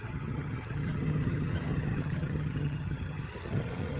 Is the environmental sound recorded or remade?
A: remade